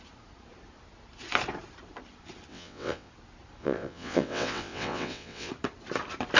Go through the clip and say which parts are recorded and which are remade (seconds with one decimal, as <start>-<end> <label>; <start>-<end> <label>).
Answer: 0.0-2.5 recorded; 2.5-3.1 remade; 3.1-3.6 recorded; 3.6-5.5 remade; 5.5-6.4 recorded